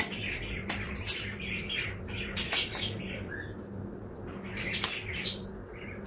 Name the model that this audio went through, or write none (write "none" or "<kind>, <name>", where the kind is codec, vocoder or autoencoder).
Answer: none